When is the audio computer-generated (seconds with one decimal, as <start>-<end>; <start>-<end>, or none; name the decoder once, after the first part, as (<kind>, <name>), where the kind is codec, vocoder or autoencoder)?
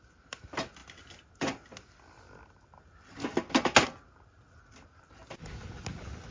none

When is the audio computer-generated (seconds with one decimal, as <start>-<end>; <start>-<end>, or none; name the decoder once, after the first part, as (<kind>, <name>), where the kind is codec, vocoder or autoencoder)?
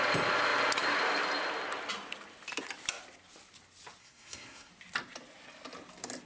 4.0-4.7 (codec, SNAC)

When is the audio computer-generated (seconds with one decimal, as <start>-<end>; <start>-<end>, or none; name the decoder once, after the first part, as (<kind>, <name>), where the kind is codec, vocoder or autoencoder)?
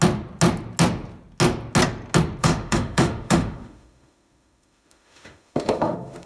2.4-6.3 (autoencoder, DAC-VAE)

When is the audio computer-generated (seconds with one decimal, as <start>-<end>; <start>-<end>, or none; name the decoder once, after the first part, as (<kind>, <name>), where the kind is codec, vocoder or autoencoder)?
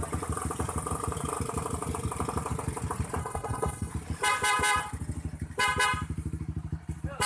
3.2-3.9 (codec, HILCodec)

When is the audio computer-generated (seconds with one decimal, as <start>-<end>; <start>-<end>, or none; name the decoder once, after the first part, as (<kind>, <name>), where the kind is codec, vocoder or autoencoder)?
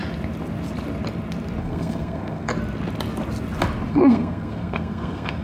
1.6-2.5 (codec, SNAC); 3.9-5.4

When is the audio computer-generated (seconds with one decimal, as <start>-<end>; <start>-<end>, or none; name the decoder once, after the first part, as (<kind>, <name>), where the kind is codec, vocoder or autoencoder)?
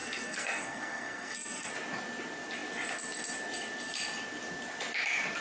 0.0-1.7 (codec, SNAC)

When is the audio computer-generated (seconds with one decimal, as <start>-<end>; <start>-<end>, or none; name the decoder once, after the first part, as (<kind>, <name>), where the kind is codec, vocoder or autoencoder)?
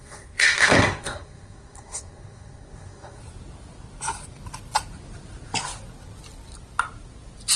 0.0-3.2 (codec, SNAC)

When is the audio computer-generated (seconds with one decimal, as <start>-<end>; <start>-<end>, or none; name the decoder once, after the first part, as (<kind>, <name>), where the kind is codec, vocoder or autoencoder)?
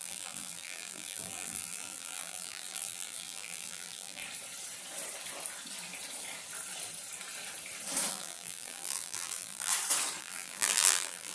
0.0-4.2 (vocoder, BigVGAN v2); 8.1-9.7; 10.2-11.3